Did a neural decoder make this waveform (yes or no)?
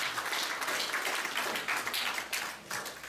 no